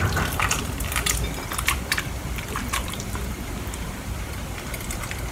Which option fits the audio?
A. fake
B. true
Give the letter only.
A